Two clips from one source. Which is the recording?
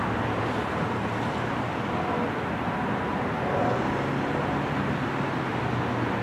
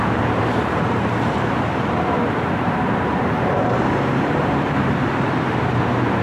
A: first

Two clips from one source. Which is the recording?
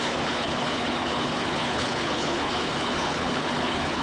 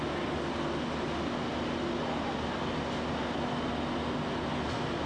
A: second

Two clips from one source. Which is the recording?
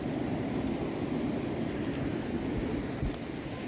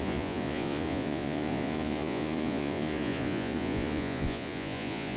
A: first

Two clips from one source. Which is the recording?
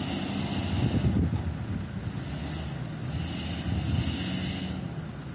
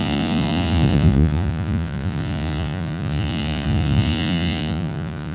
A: first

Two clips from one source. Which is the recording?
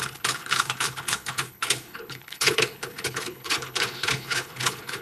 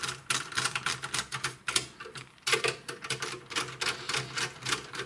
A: second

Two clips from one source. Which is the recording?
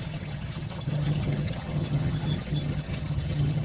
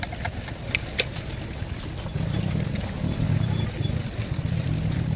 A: second